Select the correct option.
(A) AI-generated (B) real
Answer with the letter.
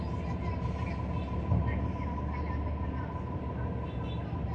B